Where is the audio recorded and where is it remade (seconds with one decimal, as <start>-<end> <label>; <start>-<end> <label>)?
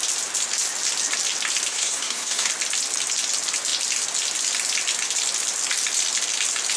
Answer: 0.0-1.7 recorded; 1.7-2.5 remade; 2.5-6.8 recorded